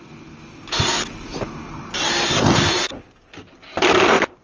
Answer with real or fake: real